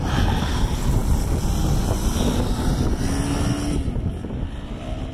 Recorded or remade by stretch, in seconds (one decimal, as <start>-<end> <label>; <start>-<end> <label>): 0.0-5.1 recorded